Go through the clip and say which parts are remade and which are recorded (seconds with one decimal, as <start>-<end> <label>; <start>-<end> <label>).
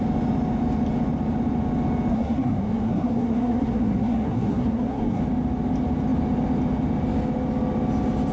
0.0-2.1 recorded; 2.1-5.2 remade; 5.2-8.3 recorded